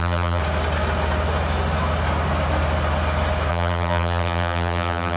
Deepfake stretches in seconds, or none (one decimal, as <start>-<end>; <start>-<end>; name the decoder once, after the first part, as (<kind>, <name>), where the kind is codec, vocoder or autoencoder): 0.0-0.4 (vocoder, BigVGAN v2); 3.5-5.2

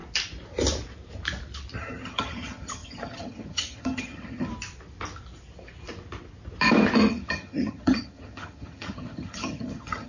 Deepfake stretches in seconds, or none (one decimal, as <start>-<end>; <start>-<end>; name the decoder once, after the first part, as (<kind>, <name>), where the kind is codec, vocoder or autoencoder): 1.8-4.5 (vocoder, HiFi-GAN); 7.1-10.1

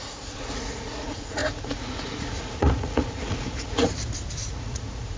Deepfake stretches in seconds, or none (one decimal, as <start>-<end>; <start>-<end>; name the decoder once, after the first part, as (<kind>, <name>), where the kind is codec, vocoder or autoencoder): 0.0-3.9 (vocoder, Vocos); 4.5-5.2

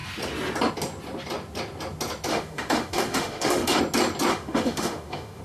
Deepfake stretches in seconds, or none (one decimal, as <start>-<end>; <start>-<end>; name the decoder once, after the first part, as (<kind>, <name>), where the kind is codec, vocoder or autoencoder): 2.3-3.8 (autoencoder, DAC-VAE); 4.3-5.4

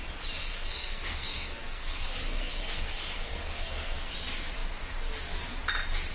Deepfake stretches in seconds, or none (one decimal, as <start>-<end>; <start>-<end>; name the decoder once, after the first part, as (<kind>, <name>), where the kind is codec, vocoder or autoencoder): 0.4-4.1 (codec, SNAC)